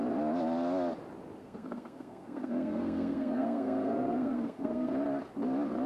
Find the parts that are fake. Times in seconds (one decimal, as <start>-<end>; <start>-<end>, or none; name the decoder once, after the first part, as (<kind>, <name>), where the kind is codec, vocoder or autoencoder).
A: 1.4-4.9 (codec, SNAC)